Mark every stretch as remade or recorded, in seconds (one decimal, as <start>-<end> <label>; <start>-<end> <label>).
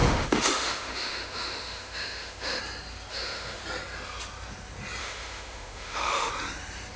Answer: 0.0-2.6 remade; 2.6-3.1 recorded; 3.1-3.6 remade; 3.6-5.0 recorded; 5.0-6.3 remade; 6.3-7.0 recorded